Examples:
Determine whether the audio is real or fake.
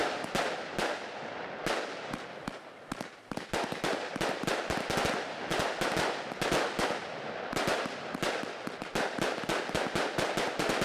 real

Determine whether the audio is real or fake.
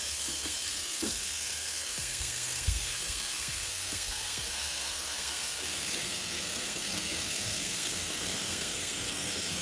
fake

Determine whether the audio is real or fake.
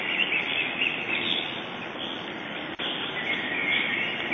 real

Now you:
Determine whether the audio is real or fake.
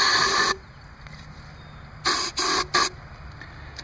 real